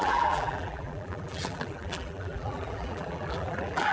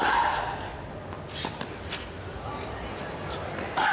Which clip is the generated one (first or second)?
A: first